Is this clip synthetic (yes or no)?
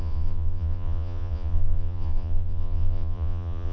yes